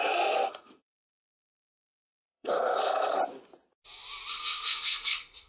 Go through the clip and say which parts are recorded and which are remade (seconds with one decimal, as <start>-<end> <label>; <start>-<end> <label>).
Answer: 0.0-3.2 remade; 3.2-4.3 recorded; 4.3-5.5 remade